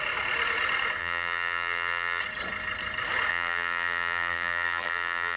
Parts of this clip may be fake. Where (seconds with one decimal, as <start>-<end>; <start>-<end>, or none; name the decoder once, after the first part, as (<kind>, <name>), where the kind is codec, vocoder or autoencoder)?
1.0-2.2 (vocoder, BigVGAN v2); 3.3-5.4